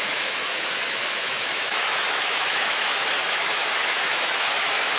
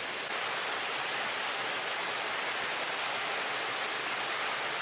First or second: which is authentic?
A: second